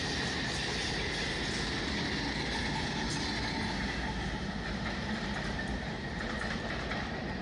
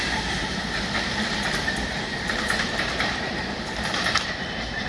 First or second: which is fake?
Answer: second